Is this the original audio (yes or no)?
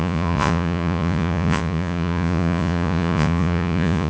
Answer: no